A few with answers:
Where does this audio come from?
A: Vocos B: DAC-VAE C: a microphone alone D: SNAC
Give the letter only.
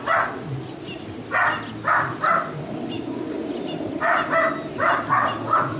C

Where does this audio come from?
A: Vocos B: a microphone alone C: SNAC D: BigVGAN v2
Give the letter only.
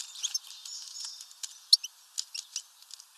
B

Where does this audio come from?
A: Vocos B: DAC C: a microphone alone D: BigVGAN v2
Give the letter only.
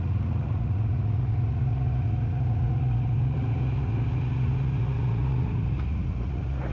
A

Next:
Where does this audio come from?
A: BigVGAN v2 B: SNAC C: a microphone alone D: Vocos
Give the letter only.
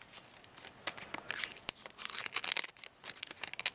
C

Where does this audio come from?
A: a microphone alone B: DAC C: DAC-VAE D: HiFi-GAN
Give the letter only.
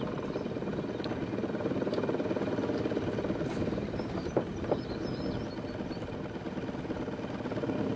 A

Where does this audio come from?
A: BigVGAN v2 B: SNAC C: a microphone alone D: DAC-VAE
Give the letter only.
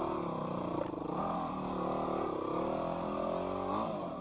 C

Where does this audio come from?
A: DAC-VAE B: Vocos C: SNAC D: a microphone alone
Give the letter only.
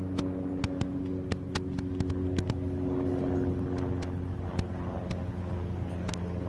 D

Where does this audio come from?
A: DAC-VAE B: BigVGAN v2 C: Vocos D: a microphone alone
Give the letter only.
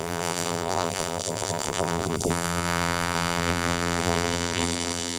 B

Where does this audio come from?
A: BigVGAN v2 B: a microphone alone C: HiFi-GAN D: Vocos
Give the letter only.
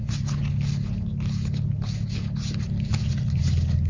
B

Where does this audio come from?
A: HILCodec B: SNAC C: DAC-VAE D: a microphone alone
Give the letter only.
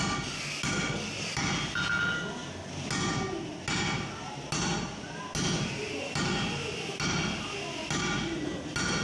D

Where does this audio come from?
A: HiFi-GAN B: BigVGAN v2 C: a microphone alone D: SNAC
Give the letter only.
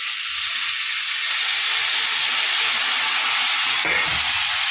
C